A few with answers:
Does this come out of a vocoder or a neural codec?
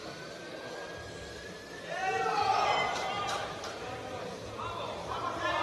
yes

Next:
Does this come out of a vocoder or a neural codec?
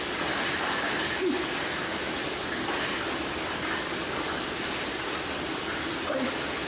yes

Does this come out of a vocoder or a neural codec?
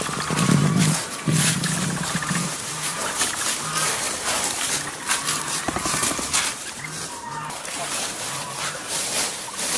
yes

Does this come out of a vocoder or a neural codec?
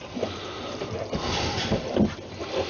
no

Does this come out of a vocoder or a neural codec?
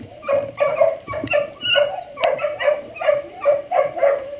yes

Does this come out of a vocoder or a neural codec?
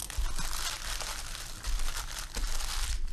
no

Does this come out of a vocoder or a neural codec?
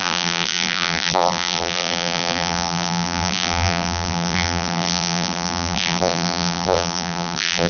yes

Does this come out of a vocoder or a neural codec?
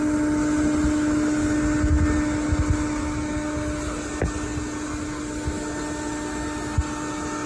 no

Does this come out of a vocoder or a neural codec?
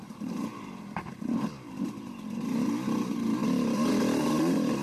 yes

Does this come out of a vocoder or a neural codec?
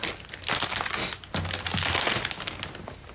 no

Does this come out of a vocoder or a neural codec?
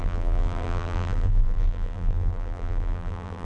yes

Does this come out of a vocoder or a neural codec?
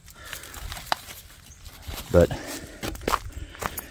yes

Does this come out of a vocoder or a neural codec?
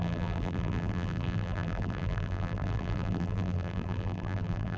yes